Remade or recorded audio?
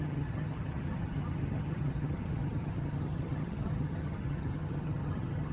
remade